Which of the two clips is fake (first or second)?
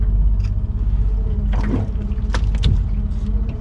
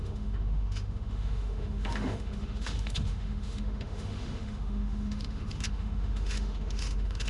second